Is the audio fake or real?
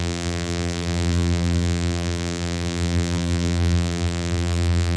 fake